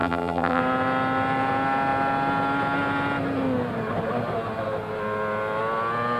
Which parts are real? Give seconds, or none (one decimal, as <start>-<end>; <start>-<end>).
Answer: 0.6-6.2